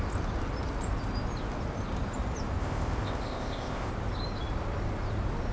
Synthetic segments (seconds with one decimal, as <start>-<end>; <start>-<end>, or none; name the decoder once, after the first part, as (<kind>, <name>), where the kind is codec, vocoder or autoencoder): 2.6-3.9 (codec, ZipCodec)